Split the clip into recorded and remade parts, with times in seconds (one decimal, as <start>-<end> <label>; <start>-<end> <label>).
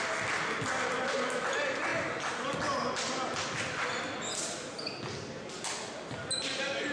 0.0-6.9 recorded